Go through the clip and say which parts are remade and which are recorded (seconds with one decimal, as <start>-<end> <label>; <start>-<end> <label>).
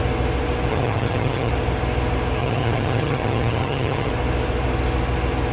0.0-0.7 recorded; 0.7-1.5 remade; 1.5-2.4 recorded; 2.4-4.1 remade; 4.1-5.5 recorded